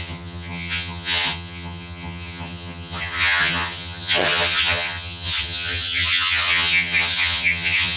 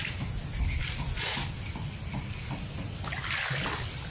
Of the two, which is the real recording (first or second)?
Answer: second